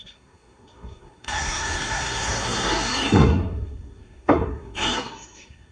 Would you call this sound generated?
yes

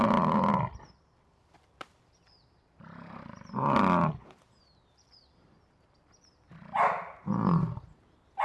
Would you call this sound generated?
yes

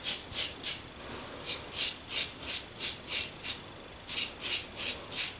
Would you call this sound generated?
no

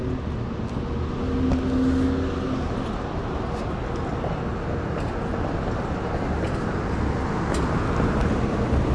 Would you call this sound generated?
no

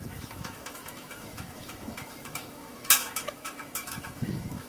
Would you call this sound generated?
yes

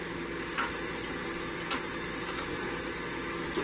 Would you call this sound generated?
no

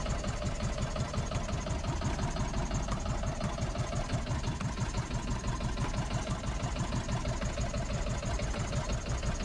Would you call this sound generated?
no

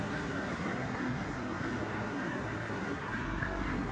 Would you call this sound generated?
yes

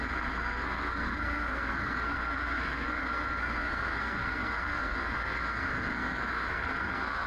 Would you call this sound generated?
yes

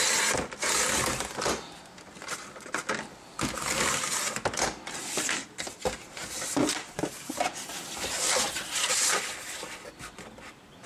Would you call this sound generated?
no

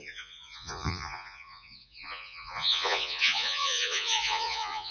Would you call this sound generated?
yes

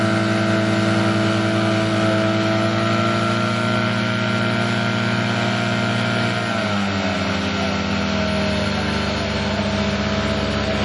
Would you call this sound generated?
no